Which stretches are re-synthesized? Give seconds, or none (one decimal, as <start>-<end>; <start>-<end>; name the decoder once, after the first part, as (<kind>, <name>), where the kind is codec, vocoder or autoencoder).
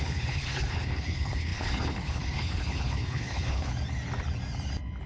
0.0-3.7 (codec, HILCodec)